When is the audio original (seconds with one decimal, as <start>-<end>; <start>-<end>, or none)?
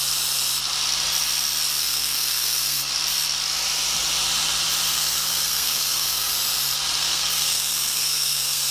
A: 0.0-1.8; 2.9-4.9; 6.3-7.0